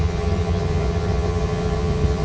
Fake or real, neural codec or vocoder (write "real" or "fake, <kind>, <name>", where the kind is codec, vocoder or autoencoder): fake, vocoder, HiFi-GAN